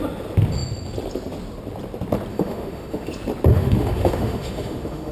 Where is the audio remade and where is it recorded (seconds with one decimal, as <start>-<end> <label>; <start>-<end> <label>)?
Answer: 0.0-2.3 recorded; 2.3-3.1 remade; 3.1-3.5 recorded; 3.5-5.1 remade